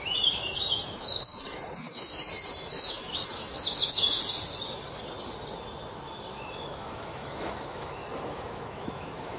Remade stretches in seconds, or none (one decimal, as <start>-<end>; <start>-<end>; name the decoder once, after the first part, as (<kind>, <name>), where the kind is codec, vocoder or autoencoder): 0.0-2.1 (autoencoder, DAC-VAE); 2.8-4.2; 6.3-9.4